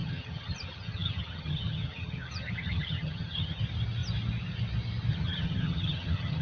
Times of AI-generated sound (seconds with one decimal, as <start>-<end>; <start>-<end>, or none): 0.0-3.6; 5.1-6.4